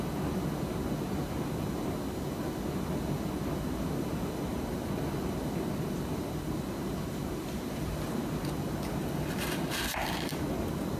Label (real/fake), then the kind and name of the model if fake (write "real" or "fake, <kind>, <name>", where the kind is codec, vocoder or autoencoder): real